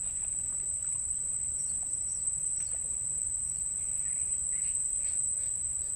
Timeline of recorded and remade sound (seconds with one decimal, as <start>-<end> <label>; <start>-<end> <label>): 0.0-0.5 recorded; 0.5-2.8 remade; 2.8-6.0 recorded